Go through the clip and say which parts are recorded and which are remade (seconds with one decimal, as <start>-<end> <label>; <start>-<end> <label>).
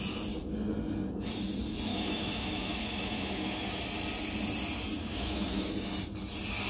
0.0-1.9 recorded; 1.9-3.8 remade; 3.8-5.0 recorded; 5.0-5.7 remade; 5.7-6.7 recorded